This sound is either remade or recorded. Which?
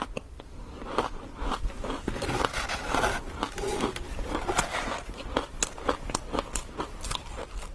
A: recorded